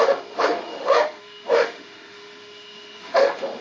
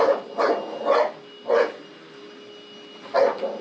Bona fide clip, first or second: second